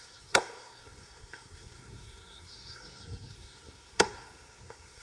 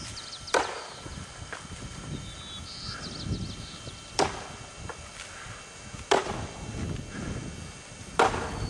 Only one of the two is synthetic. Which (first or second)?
first